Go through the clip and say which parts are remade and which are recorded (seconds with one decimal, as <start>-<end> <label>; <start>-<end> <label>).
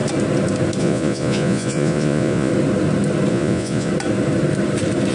0.0-0.8 recorded; 0.8-2.5 remade; 2.5-3.3 recorded; 3.3-3.9 remade; 3.9-5.1 recorded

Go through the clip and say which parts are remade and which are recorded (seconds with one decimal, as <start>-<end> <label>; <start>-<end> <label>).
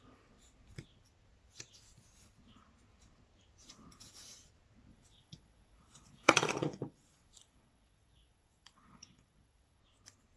0.0-4.9 recorded; 4.9-9.8 remade; 9.8-10.4 recorded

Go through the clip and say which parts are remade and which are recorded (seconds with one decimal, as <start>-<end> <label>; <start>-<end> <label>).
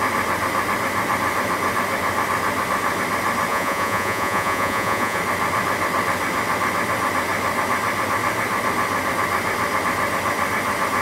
0.0-3.5 recorded; 3.5-5.2 remade; 5.2-11.0 recorded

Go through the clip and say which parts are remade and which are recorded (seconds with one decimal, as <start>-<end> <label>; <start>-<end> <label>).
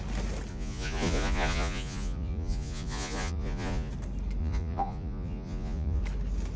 0.0-0.5 recorded; 0.5-3.9 remade; 3.9-4.4 recorded; 4.4-6.0 remade; 6.0-6.6 recorded